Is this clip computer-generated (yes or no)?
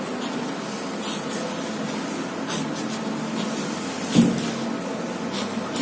no